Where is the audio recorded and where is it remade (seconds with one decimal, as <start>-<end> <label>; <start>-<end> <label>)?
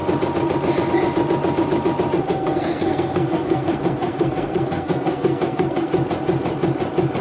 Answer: 0.0-2.3 recorded; 2.3-5.9 remade; 5.9-7.2 recorded